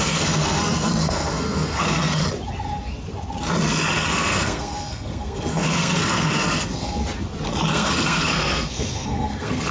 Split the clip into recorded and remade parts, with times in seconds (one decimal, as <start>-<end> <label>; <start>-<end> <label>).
0.0-2.2 remade; 2.2-4.1 recorded; 4.1-7.0 remade; 7.0-7.7 recorded; 7.7-9.7 remade

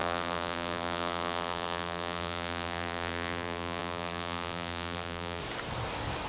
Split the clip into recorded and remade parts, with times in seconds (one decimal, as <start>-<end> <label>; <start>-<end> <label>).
0.0-5.4 remade; 5.4-6.3 recorded

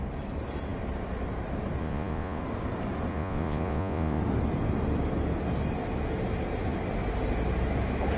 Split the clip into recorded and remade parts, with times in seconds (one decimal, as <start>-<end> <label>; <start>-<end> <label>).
0.0-1.8 recorded; 1.8-2.4 remade; 2.4-3.1 recorded; 3.1-4.2 remade; 4.2-8.2 recorded

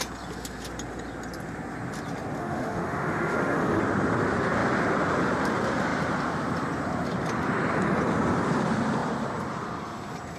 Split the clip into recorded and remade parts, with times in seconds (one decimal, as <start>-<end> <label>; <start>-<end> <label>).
0.0-2.4 recorded; 2.4-3.8 remade; 3.8-10.4 recorded

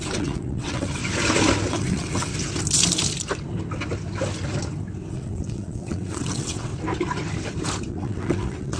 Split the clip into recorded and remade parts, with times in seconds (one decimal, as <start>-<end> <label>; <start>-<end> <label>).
0.0-1.0 remade; 1.0-1.7 recorded; 1.7-2.3 remade; 2.3-5.1 recorded; 5.1-6.7 remade; 6.7-7.9 recorded; 7.9-8.8 remade

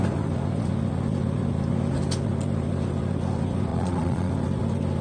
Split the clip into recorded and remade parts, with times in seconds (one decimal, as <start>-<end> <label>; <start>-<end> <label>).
0.0-3.7 recorded; 3.7-4.3 remade; 4.3-5.0 recorded